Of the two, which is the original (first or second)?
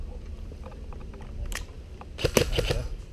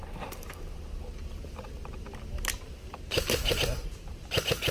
first